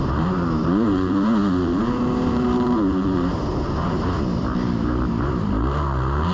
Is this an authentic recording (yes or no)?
no